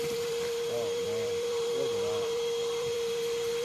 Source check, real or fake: fake